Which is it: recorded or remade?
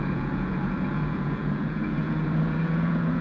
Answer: remade